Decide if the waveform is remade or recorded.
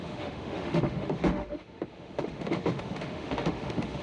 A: remade